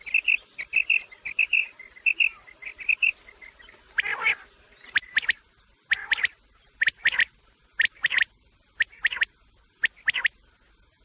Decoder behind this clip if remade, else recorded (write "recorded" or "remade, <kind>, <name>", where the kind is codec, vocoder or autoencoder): recorded